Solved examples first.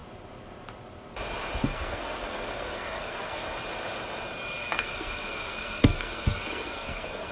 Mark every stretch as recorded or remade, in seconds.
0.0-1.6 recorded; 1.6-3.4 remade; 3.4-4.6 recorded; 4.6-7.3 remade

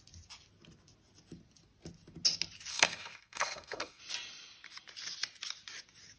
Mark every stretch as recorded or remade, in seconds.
0.0-2.7 recorded; 2.7-4.0 remade; 4.0-6.2 recorded

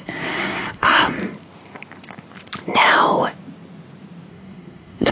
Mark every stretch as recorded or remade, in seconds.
0.0-1.2 remade; 1.2-4.3 recorded; 4.3-5.1 remade

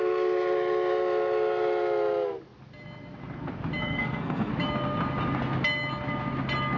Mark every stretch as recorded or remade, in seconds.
0.0-3.8 recorded; 3.8-4.5 remade; 4.5-6.8 recorded

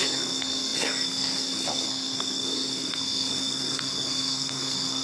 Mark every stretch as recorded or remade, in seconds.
0.0-5.0 remade